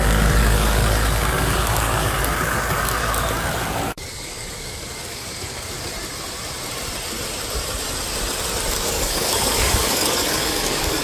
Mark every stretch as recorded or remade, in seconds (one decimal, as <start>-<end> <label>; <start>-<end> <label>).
0.0-5.9 remade; 5.9-8.7 recorded; 8.7-11.0 remade